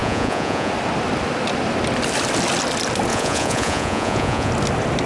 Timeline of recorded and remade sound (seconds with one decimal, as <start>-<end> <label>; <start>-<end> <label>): 0.0-0.7 remade; 0.7-3.1 recorded; 3.1-4.5 remade; 4.5-5.1 recorded